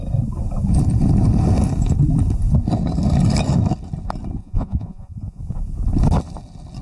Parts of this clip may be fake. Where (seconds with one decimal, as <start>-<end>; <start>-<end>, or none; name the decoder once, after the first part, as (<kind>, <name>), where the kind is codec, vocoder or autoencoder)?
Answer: 4.4-5.4 (vocoder, Vocos)